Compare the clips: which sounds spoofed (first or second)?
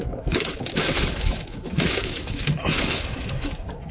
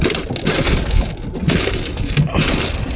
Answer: first